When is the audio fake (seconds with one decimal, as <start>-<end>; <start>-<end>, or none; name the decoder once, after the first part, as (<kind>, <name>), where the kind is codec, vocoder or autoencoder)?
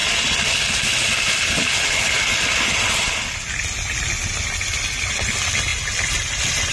none